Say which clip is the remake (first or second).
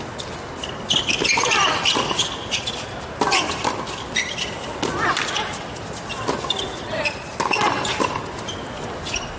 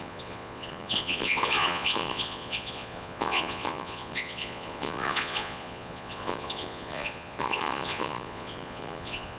second